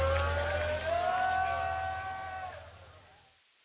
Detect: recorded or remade recorded